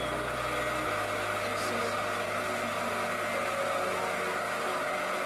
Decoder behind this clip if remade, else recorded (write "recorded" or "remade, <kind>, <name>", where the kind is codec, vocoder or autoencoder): recorded